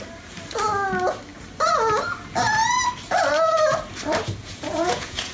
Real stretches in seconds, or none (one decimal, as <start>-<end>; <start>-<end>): 0.0-4.4